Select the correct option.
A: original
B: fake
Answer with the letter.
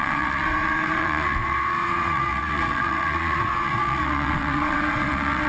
B